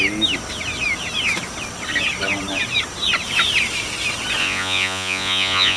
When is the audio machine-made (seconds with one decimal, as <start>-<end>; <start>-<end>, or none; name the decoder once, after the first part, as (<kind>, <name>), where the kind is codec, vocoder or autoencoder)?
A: 4.4-5.8 (vocoder, Vocos)